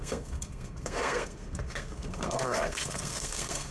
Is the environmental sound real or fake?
fake